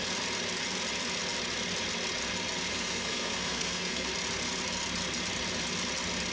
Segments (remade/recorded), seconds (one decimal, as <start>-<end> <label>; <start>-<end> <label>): 0.0-2.7 recorded; 2.7-4.1 remade; 4.1-6.3 recorded